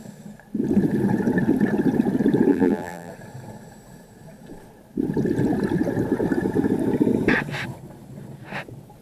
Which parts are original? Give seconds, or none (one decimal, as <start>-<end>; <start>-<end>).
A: 0.0-2.5; 3.1-9.0